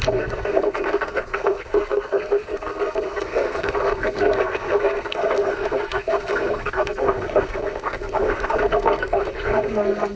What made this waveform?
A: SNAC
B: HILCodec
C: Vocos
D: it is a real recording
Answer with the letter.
A